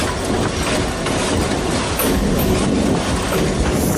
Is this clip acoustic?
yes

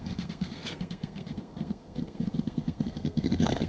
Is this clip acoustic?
no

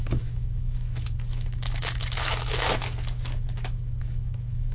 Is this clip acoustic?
no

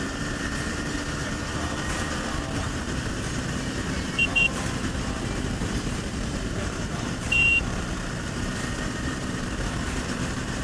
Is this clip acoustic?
no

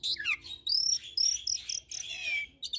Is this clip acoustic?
yes